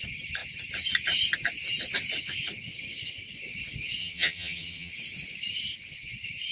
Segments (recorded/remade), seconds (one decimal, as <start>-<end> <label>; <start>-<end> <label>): 0.0-4.0 recorded; 4.0-4.9 remade; 4.9-6.5 recorded